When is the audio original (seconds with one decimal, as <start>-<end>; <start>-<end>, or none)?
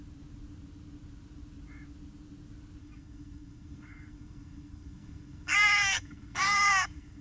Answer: 0.0-2.8